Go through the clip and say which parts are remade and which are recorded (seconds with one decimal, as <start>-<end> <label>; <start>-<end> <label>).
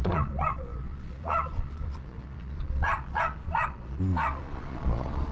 0.0-5.3 remade